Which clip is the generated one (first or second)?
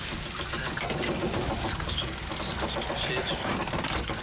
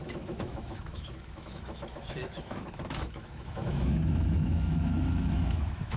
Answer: second